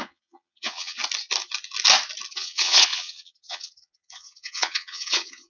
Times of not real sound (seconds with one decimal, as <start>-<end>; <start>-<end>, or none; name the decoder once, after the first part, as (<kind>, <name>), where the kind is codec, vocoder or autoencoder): 0.0-1.0 (vocoder, Vocos); 2.3-5.5